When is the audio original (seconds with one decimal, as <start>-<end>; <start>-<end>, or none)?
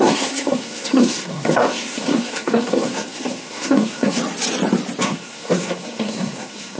4.2-5.0